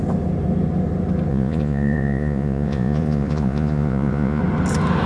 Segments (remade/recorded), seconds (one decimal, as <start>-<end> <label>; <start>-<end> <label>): 0.0-1.3 recorded; 1.3-4.4 remade; 4.4-5.1 recorded